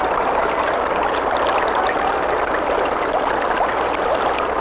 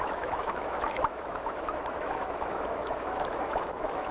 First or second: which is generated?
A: second